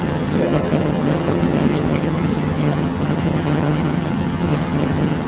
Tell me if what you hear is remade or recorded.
remade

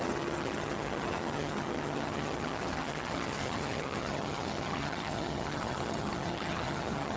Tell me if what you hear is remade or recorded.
remade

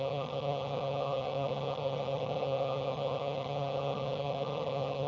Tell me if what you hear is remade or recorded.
remade